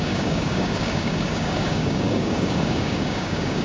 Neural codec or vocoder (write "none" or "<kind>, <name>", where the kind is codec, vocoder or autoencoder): codec, DAC